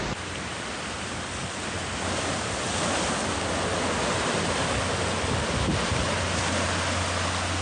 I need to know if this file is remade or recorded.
recorded